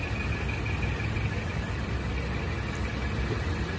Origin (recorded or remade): recorded